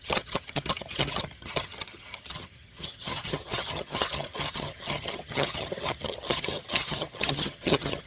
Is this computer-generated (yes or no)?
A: yes